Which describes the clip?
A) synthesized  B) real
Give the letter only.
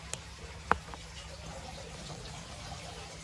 B